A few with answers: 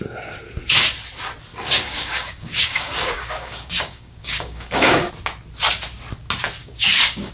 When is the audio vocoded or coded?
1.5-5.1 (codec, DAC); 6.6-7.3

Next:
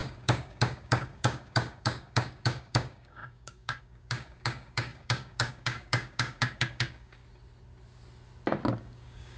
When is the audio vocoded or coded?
0.0-7.2 (codec, DAC); 8.8-9.4

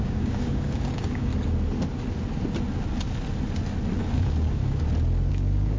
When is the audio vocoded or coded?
0.0-1.3 (codec, DAC); 4.0-4.6; 5.3-5.8

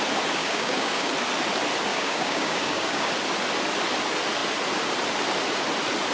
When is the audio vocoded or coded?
0.4-1.1 (codec, DAC); 1.9-3.1